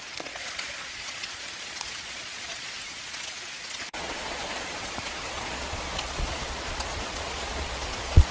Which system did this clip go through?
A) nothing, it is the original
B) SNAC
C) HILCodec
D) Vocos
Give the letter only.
D